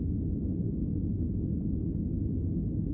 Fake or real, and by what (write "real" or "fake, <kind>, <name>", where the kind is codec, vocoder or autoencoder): real